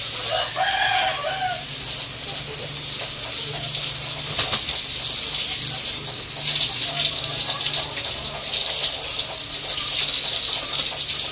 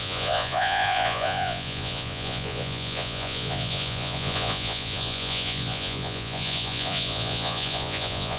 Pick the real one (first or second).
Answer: first